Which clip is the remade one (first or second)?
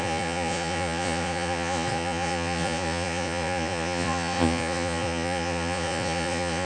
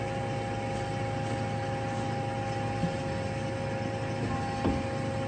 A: first